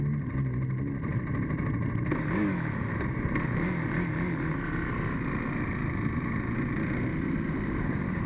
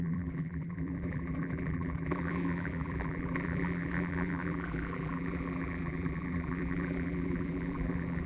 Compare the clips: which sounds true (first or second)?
first